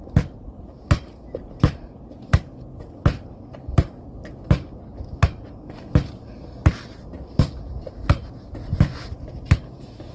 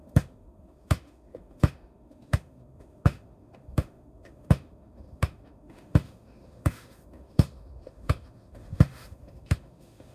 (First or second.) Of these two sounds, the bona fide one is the first